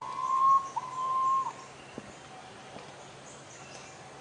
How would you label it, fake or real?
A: real